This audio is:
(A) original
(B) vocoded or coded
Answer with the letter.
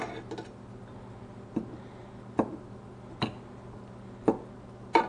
A